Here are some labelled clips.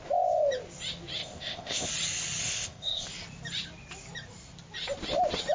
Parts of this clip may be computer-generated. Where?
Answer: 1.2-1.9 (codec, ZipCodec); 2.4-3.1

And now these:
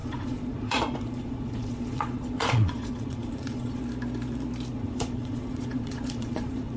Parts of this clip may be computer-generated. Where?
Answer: 0.0-3.8 (vocoder, Vocos); 4.7-6.8

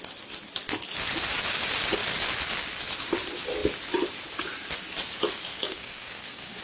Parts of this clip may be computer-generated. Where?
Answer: 5.5-6.6 (codec, SNAC)

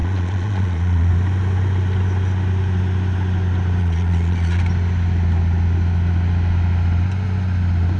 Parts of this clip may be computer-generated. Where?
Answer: 0.0-1.1 (vocoder, Vocos); 3.8-4.6

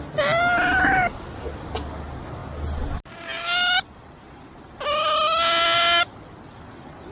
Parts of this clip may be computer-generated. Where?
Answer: none

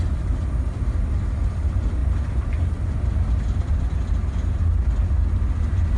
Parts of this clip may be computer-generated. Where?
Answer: none

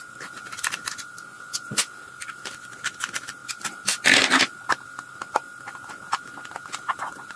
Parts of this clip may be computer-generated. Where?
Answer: 1.3-1.8 (vocoder, Vocos)